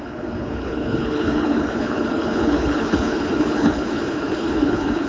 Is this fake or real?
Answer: fake